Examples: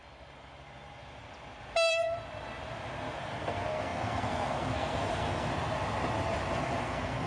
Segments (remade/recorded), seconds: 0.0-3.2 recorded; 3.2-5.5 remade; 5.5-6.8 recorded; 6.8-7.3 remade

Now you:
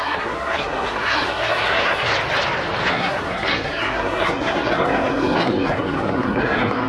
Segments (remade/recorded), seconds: 0.0-2.1 remade; 2.1-2.9 recorded; 2.9-6.9 remade

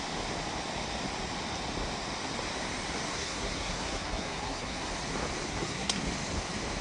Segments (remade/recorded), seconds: 0.0-3.1 recorded; 3.1-4.9 remade; 4.9-5.5 recorded; 5.5-6.0 remade; 6.0-6.8 recorded

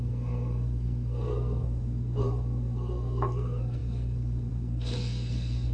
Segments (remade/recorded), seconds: 0.0-5.7 remade

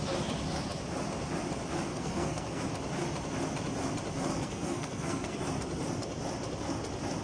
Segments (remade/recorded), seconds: 0.0-1.9 recorded; 1.9-2.6 remade; 2.6-4.3 recorded; 4.3-5.4 remade; 5.4-7.2 recorded

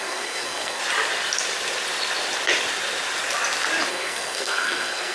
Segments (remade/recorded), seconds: 0.0-0.8 remade; 0.8-3.9 recorded; 3.9-5.1 remade